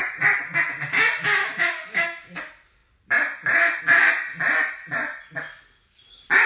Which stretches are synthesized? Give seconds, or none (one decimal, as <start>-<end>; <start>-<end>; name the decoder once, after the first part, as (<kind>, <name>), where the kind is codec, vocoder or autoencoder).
1.4-2.2 (codec, DAC)